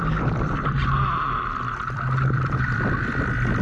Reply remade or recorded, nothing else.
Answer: remade